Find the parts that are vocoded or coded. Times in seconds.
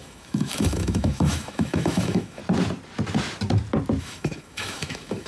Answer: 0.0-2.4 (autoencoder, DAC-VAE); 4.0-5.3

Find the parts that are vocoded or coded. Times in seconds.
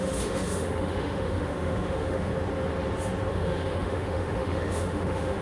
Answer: 0.0-2.3 (autoencoder, DAC-VAE); 3.3-5.4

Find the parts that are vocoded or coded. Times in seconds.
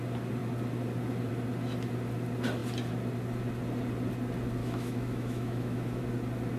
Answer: 4.6-6.0 (autoencoder, DAC-VAE)